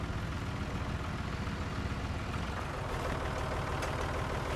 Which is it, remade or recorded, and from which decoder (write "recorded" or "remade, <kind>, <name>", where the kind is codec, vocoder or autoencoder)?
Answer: recorded